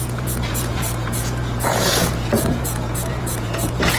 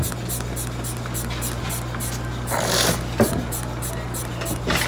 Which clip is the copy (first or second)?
first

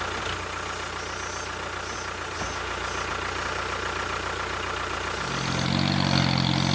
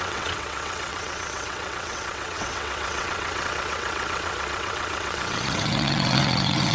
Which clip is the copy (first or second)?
second